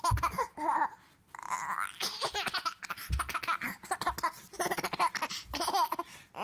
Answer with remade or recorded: recorded